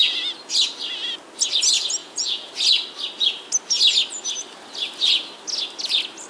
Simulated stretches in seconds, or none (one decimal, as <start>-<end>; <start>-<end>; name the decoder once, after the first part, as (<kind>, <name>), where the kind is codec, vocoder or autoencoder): 2.0-2.5 (vocoder, Vocos)